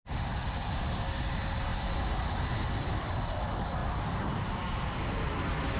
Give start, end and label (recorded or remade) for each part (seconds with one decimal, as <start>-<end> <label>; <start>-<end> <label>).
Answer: 0.0-1.7 recorded; 1.7-3.2 remade; 3.2-3.8 recorded; 3.8-5.0 remade; 5.0-5.8 recorded